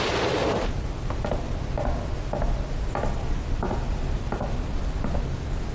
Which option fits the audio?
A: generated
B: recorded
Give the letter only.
B